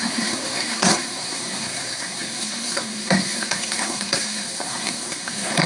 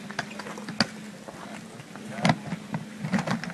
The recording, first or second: second